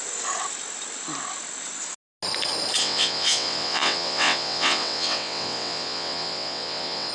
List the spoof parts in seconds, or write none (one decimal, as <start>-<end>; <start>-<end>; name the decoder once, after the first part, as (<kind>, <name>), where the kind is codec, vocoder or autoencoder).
2.8-7.1 (vocoder, WaveNeXt)

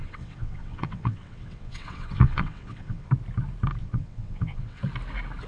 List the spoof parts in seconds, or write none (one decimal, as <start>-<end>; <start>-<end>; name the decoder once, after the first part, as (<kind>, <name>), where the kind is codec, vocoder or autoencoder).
0.0-3.1 (vocoder, WaveNeXt); 3.8-4.8

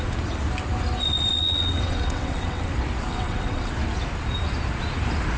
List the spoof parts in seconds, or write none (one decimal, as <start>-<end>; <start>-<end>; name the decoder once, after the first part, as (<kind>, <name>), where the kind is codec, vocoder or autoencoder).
1.4-2.7 (vocoder, WaveNeXt); 3.1-3.7

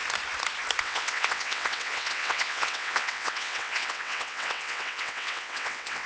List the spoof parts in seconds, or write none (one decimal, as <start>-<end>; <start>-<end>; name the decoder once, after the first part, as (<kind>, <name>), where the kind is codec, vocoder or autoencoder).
0.8-6.1 (vocoder, WaveNeXt)

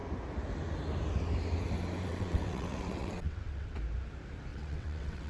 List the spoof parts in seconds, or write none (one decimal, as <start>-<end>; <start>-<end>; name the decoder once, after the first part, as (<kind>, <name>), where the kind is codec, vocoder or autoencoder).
2.1-3.8 (vocoder, WaveNeXt); 4.5-5.3